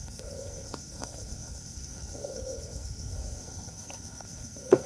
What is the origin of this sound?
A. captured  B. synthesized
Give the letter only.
B